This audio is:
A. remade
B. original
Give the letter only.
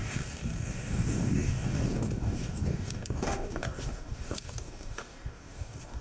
A